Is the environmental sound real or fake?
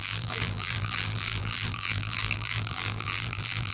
fake